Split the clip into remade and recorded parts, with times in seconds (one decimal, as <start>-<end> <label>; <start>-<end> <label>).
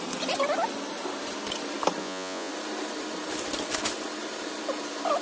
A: 0.0-2.0 recorded; 2.0-2.5 remade; 2.5-5.2 recorded